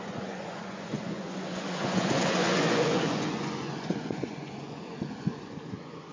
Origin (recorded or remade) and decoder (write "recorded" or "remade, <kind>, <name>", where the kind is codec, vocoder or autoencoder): remade, vocoder, Vocos